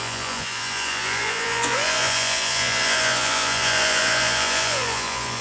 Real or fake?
fake